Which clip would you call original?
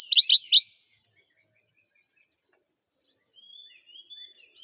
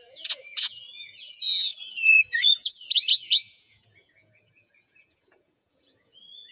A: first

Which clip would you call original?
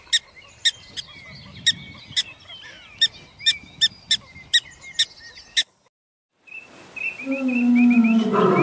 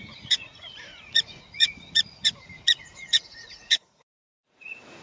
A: first